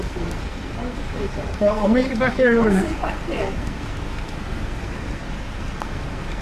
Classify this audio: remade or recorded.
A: remade